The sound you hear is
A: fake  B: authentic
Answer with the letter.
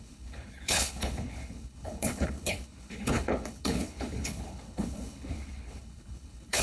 A